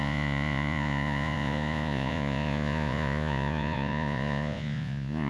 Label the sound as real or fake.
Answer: fake